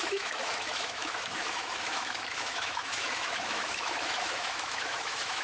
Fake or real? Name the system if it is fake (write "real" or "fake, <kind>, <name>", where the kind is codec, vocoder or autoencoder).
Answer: fake, autoencoder, DAC-VAE